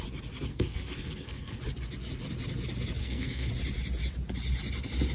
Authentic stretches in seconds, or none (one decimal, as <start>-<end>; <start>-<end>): 0.0-0.5; 1.6-3.0; 3.5-5.1